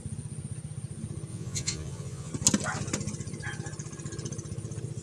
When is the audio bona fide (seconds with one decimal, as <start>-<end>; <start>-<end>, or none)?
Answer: 0.0-1.3; 2.3-5.0